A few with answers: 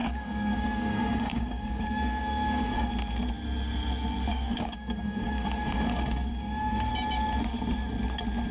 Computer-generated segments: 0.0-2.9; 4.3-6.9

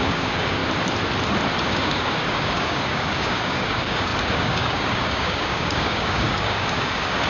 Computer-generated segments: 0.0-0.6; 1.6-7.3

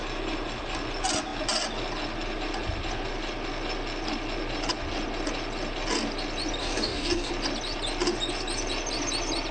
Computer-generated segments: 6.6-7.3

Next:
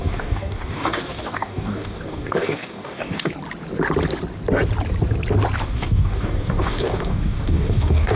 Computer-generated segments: 0.0-3.3; 5.6-8.2

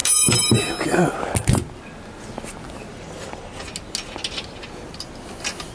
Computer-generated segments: 2.9-3.6

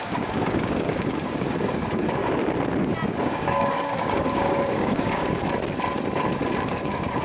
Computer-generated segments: 0.0-2.2; 3.2-5.4; 6.7-7.2

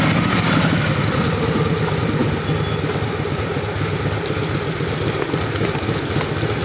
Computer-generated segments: none

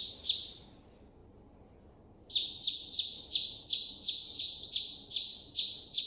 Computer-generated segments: none